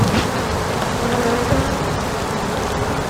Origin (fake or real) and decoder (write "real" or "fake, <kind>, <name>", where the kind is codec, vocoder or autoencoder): fake, vocoder, BigVGAN v2